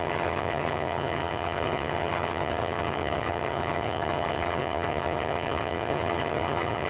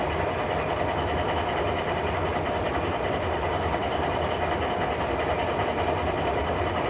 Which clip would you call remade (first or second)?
first